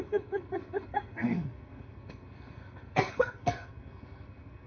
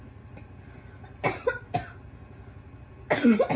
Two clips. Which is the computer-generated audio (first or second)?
first